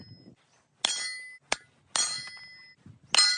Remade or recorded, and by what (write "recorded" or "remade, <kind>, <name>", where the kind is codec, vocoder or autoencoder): recorded